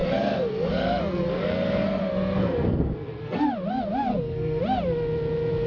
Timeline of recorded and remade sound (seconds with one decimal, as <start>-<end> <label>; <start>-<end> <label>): 0.0-3.4 remade; 3.4-4.1 recorded; 4.1-4.6 remade; 4.6-5.7 recorded